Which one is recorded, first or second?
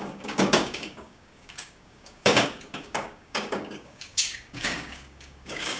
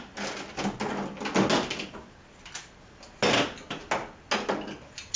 second